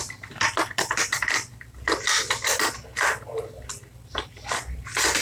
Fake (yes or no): no